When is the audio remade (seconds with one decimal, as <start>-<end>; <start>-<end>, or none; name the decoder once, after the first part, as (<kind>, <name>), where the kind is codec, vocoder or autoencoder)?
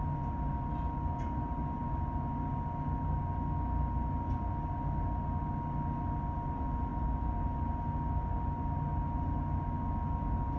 none